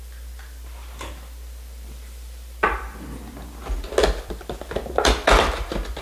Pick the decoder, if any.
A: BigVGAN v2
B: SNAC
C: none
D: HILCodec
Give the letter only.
C